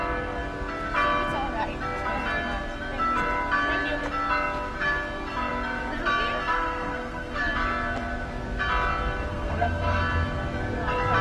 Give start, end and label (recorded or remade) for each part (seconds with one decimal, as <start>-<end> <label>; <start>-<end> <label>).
0.0-6.5 recorded; 6.5-7.4 remade; 7.4-9.3 recorded; 9.3-10.0 remade; 10.0-11.2 recorded